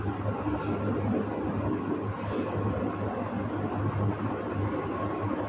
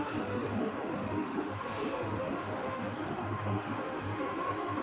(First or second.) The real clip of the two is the first